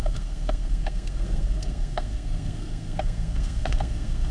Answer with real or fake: fake